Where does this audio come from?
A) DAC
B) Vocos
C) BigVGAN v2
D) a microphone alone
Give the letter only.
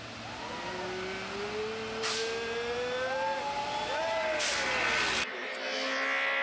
D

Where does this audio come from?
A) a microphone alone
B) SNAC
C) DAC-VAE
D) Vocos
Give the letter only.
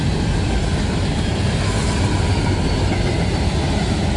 A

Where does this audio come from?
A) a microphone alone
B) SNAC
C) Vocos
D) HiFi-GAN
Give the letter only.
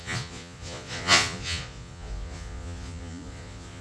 C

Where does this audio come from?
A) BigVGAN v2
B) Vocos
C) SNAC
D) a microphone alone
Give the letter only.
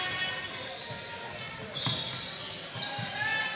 D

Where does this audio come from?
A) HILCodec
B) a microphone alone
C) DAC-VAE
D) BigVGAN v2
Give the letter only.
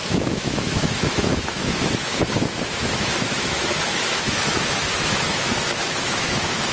C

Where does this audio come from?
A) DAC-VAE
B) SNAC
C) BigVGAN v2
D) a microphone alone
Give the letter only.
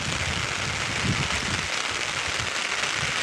D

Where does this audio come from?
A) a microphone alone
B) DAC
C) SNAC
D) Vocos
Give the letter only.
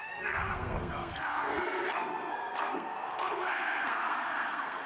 C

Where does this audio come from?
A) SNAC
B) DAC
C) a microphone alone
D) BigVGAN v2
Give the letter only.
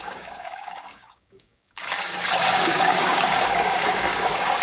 B